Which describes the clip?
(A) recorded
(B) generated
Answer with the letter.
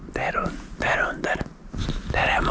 A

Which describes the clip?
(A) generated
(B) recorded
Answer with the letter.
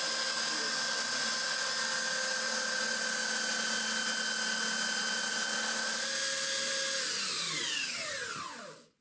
B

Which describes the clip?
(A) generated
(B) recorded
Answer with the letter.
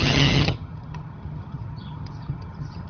A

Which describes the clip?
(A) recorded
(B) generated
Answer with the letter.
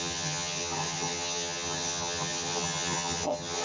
B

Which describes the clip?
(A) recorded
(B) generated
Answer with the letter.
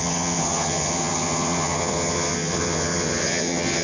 B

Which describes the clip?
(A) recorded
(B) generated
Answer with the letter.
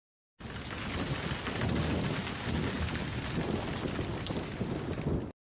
A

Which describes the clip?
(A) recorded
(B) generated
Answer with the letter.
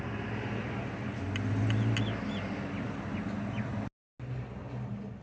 A